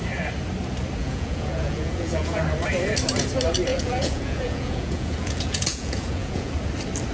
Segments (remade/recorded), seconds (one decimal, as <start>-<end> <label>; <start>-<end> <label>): 0.0-1.0 recorded; 1.0-2.4 remade; 2.4-3.7 recorded; 3.7-6.5 remade; 6.5-7.1 recorded